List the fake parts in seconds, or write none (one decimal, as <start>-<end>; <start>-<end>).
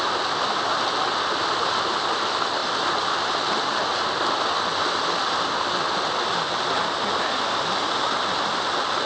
none